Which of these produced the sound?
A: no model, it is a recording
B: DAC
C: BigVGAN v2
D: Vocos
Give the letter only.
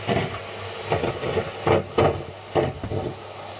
A